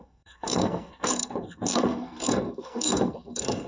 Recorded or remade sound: remade